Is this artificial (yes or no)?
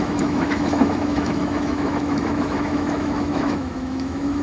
yes